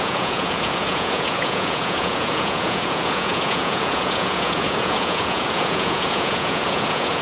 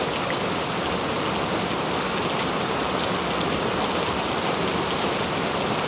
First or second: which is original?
second